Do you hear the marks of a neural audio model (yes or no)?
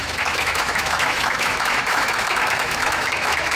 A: yes